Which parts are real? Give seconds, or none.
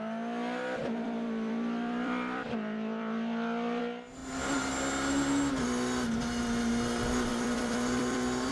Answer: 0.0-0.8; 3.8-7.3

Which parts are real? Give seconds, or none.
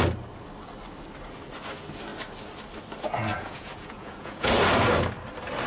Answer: 0.0-3.3; 4.5-5.7